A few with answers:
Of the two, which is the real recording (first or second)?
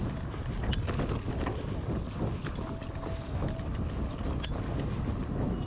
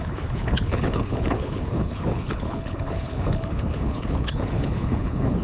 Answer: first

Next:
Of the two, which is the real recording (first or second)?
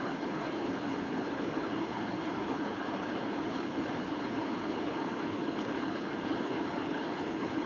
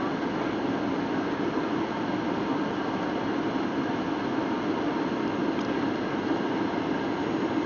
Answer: second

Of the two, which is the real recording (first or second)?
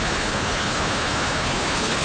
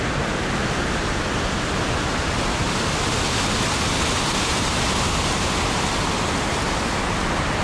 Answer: second